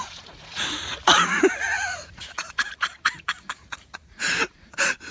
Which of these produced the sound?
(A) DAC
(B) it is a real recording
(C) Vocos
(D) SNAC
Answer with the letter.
C